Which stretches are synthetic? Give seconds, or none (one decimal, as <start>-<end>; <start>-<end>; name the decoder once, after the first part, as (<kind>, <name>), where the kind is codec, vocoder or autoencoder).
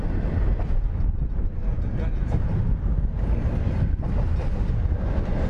none